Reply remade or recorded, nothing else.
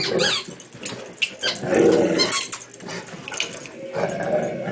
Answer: recorded